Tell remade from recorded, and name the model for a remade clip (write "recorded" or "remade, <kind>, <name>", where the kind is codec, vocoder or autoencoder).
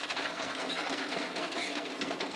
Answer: remade, codec, SNAC